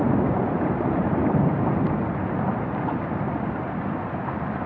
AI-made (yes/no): no